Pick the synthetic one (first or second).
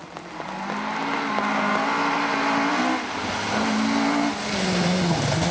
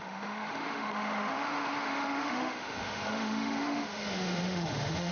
second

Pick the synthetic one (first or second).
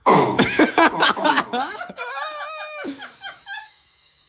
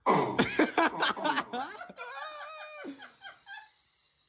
first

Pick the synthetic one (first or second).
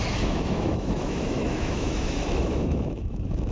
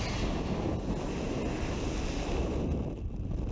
first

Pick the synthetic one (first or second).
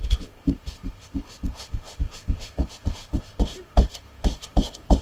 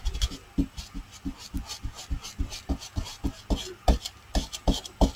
first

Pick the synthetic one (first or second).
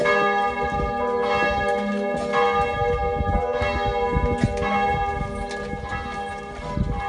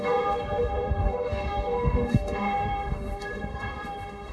second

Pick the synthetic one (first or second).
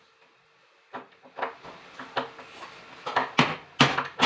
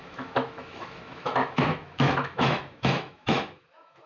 second